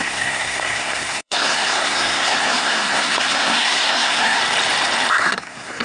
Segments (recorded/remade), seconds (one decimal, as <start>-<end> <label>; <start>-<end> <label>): 0.0-4.4 remade; 4.4-5.1 recorded; 5.1-5.8 remade